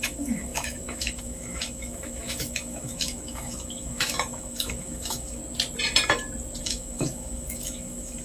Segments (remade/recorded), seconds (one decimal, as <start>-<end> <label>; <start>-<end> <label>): 0.0-5.4 remade; 5.4-6.6 recorded; 6.6-8.2 remade